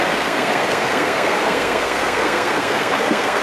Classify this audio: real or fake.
fake